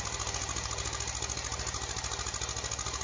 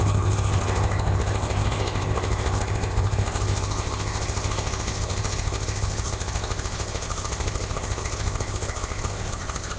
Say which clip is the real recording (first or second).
first